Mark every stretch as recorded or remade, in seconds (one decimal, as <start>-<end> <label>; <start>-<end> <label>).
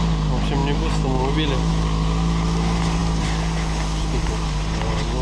0.0-5.2 recorded